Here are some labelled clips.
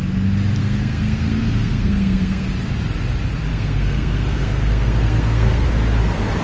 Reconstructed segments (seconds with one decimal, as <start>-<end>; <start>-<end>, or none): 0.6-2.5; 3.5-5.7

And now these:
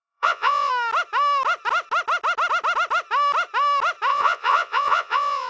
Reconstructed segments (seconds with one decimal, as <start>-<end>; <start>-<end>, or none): 0.0-0.7; 4.1-5.5

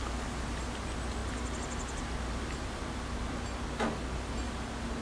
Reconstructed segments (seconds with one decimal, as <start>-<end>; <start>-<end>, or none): none

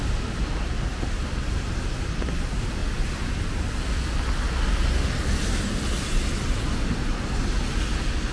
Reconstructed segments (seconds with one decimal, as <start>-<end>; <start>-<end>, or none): none

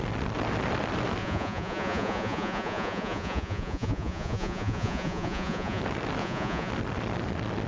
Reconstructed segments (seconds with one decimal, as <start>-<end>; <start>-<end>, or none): 1.2-5.8; 6.2-6.7

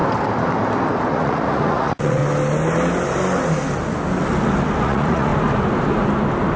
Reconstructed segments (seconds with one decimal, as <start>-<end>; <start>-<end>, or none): 1.1-2.2; 4.8-5.3

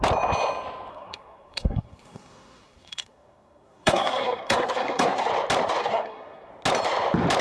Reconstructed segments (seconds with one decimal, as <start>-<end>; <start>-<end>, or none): 0.9-5.3; 5.8-6.5

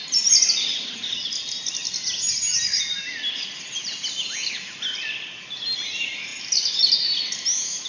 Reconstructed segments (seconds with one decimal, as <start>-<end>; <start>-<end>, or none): none